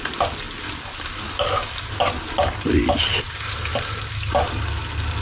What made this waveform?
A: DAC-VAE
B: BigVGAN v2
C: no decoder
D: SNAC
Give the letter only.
C